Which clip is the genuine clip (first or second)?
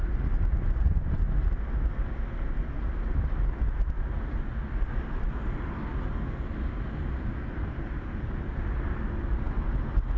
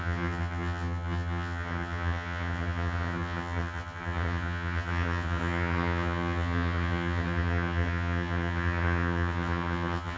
first